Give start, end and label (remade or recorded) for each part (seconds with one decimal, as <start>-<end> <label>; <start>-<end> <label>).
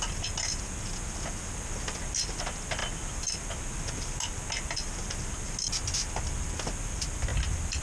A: 0.0-7.8 recorded